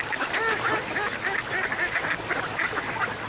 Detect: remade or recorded recorded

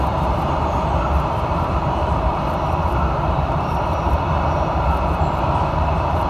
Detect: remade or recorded remade